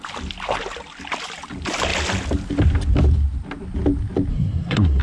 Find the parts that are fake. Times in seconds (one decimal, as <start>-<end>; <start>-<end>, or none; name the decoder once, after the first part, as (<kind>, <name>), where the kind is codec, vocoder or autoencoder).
4.3-5.0 (codec, SNAC)